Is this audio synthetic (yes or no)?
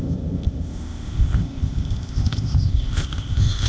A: yes